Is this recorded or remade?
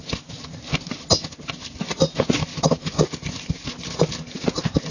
recorded